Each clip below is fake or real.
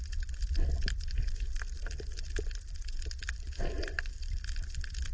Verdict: real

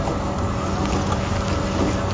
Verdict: real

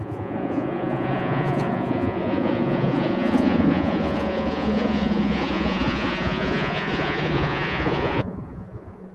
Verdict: fake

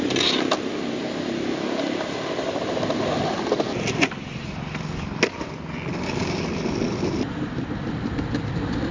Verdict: real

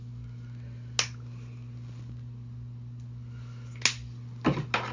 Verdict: real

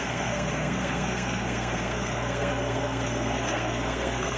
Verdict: fake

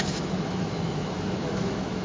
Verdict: fake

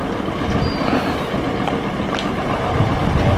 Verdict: real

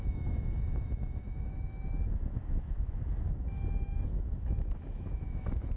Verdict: fake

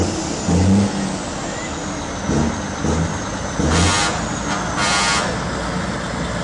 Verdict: real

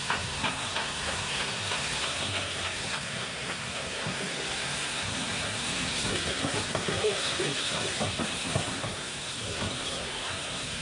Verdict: fake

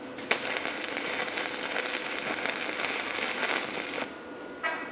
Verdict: real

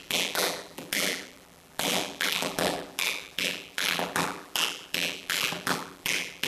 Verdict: fake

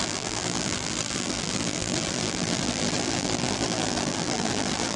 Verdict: fake